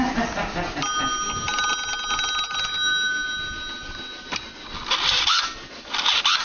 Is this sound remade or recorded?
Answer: recorded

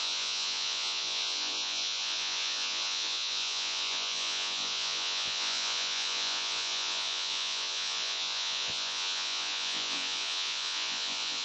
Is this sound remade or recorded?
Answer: remade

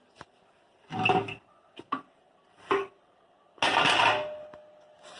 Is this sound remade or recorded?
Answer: recorded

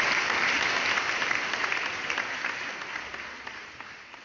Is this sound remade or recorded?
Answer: recorded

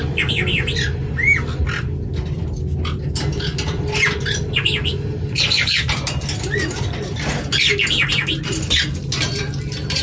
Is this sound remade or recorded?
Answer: recorded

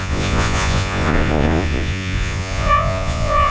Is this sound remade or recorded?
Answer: remade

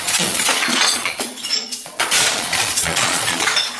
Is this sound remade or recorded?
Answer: remade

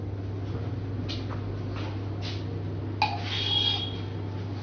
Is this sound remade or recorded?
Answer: recorded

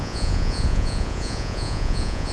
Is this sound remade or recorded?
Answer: remade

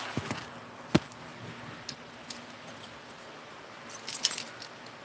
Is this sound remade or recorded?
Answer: recorded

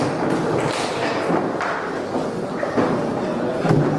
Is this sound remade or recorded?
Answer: recorded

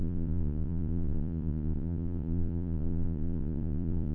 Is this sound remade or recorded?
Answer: remade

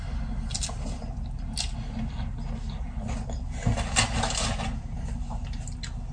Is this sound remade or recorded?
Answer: recorded